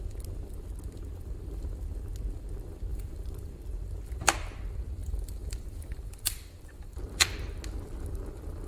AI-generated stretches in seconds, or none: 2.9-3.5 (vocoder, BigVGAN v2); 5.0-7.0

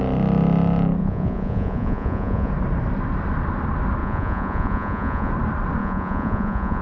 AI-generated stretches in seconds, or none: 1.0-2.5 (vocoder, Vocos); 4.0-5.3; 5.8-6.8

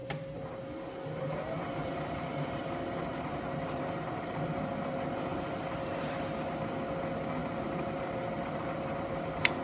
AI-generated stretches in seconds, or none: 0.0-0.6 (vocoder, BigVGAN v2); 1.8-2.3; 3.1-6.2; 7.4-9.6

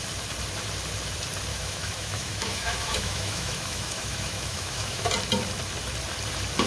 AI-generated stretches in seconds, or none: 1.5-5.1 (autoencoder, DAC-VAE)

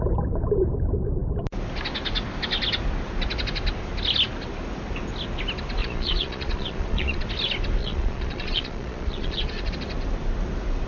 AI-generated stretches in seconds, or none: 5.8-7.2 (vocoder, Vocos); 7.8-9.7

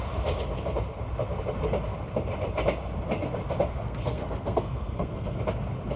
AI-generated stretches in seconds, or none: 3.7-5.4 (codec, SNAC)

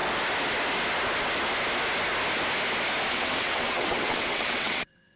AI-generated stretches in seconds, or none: 3.1-5.2 (vocoder, WaveNeXt)

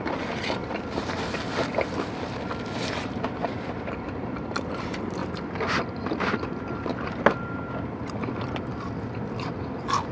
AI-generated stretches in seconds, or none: 0.0-10.1 (vocoder, BigVGAN v2)